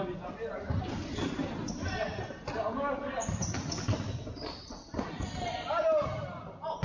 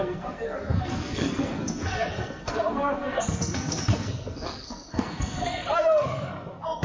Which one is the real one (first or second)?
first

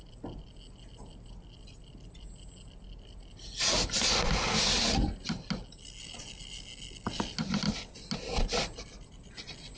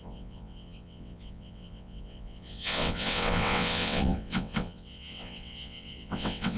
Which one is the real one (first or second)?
first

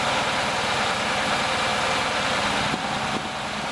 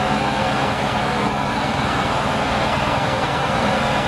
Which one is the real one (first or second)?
first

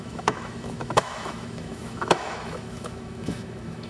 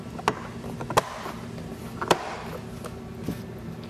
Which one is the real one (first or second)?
second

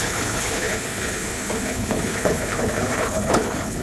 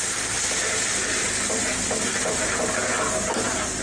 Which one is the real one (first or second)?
second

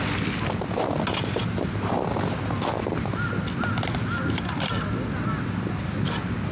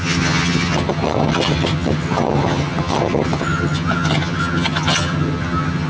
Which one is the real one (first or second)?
first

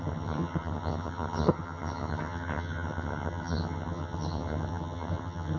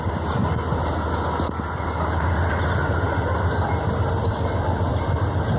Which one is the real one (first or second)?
second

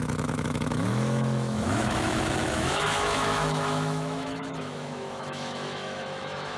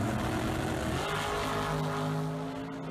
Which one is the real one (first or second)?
second